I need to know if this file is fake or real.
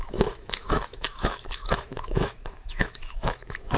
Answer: fake